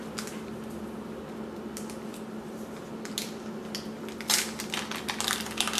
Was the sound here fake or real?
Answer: real